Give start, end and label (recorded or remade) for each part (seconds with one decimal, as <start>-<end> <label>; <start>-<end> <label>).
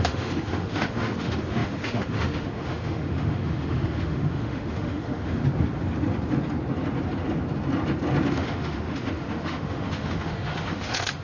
0.0-5.4 remade; 5.4-8.3 recorded; 8.3-11.2 remade